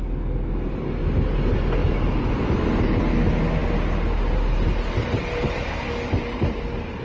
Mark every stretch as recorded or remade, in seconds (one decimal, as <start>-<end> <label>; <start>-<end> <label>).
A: 0.0-7.0 recorded